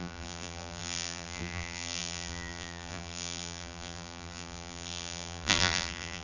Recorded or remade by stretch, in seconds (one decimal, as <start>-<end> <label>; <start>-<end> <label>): 0.0-6.2 remade